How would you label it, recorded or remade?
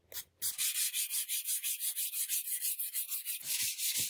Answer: recorded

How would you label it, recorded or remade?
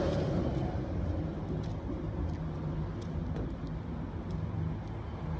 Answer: recorded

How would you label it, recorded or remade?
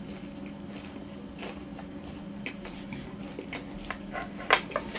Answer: recorded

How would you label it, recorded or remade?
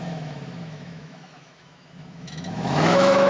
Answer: remade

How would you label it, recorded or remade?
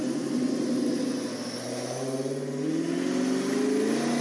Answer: recorded